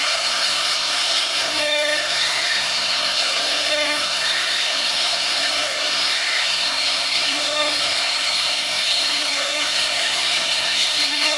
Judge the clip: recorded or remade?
remade